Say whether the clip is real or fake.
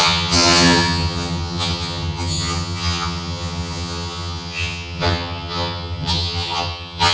fake